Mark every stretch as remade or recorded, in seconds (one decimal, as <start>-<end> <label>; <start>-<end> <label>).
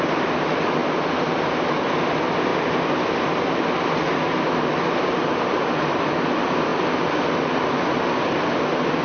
0.0-9.0 recorded